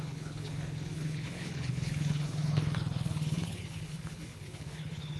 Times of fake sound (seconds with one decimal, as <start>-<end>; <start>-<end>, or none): 0.0-5.2